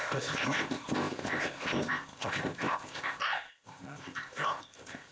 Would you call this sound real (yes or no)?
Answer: no